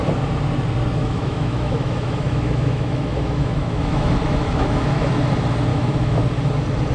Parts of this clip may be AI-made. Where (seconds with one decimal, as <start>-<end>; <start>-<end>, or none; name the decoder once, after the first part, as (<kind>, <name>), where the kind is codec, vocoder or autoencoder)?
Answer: 1.0-5.1 (autoencoder, DAC-VAE); 5.7-6.2